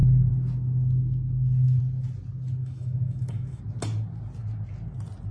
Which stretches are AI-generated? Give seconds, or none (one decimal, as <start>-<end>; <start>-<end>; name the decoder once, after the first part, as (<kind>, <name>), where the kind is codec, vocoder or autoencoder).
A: 2.6-3.6 (autoencoder, DAC-VAE)